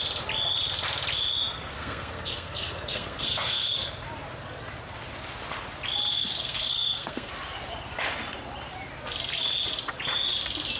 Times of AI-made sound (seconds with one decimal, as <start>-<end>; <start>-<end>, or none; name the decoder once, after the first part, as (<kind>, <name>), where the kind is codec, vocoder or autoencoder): 1.8-3.7 (codec, SNAC); 6.1-7.3